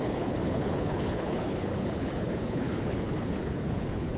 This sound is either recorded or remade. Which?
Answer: remade